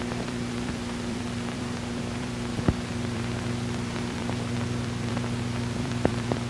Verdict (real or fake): fake